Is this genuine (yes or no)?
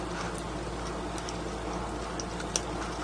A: yes